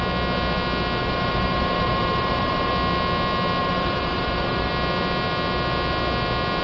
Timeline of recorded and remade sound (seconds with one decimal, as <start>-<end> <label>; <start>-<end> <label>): 0.0-1.0 recorded; 1.0-2.7 remade; 2.7-3.6 recorded; 3.6-4.7 remade; 4.7-6.6 recorded